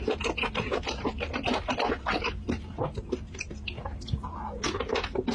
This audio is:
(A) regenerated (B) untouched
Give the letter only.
B